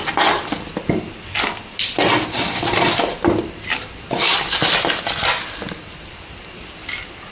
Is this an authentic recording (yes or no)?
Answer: yes